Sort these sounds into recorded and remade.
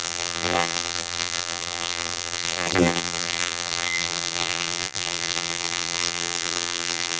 remade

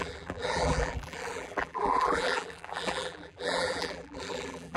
remade